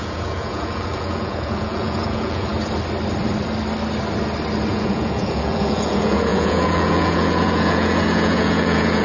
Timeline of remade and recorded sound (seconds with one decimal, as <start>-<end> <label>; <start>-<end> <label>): 0.0-2.5 remade; 2.5-4.7 recorded; 4.7-9.0 remade

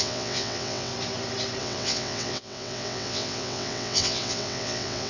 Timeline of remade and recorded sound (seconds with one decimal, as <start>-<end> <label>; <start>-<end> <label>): 0.0-0.9 remade; 0.9-1.6 recorded; 1.6-5.1 remade

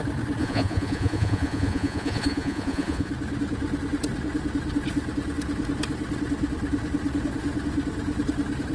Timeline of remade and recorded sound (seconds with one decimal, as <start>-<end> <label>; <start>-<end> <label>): 0.0-0.4 recorded; 0.4-3.1 remade; 3.1-8.7 recorded

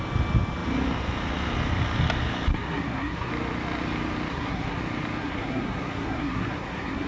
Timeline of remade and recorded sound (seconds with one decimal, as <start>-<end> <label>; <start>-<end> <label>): 0.0-2.5 recorded; 2.5-3.3 remade; 3.3-4.3 recorded; 4.3-4.8 remade; 4.8-5.2 recorded; 5.2-7.1 remade

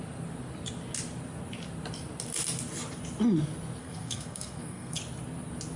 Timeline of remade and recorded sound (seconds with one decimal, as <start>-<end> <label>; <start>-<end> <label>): 0.0-3.8 recorded; 3.8-5.0 remade; 5.0-5.8 recorded